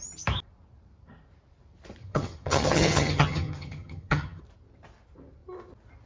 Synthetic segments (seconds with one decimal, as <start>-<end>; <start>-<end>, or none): 2.0-4.4